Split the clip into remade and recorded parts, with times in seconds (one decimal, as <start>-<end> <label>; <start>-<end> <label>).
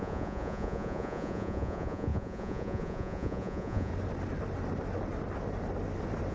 0.0-3.9 remade; 3.9-6.3 recorded